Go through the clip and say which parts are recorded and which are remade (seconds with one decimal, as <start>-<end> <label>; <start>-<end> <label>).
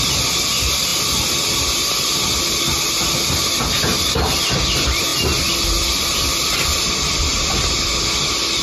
0.0-8.6 recorded